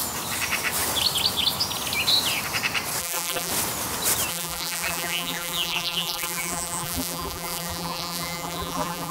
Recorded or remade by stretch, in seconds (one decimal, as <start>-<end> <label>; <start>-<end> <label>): 0.0-3.0 recorded; 3.0-3.5 remade; 3.5-4.3 recorded; 4.3-9.1 remade